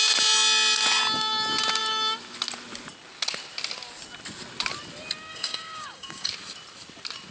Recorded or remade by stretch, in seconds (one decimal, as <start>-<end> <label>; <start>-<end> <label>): 0.0-5.3 recorded; 5.3-6.3 remade; 6.3-7.3 recorded